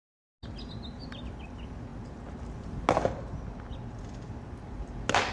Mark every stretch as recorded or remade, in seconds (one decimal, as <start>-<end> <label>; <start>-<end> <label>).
0.0-5.3 recorded